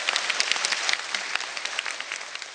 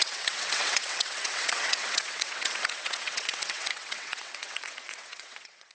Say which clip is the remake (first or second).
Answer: second